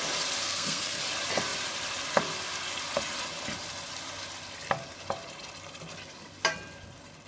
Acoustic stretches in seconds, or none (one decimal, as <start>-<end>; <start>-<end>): 0.0-0.4; 1.0-7.3